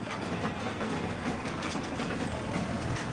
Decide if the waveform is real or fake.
fake